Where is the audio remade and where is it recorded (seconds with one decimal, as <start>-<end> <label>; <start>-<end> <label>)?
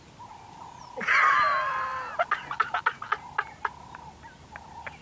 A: 0.0-5.0 recorded